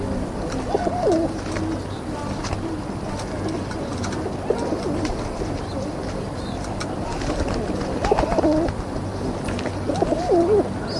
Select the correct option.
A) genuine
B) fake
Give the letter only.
A